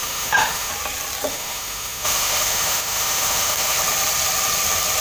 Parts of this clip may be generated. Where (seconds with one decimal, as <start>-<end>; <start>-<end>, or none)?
0.0-0.7; 1.3-3.8